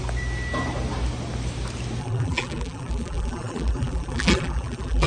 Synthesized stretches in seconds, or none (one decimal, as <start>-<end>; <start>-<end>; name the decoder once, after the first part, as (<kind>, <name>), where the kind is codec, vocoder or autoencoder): 2.0-5.1 (vocoder, BigVGAN v2)